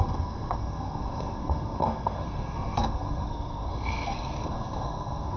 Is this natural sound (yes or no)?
no